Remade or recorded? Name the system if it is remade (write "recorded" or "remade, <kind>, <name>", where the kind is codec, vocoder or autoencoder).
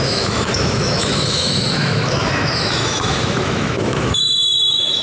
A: remade, autoencoder, DAC-VAE